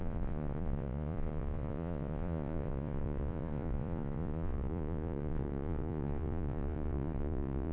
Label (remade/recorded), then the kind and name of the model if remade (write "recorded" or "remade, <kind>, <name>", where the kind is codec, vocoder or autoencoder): remade, vocoder, Vocos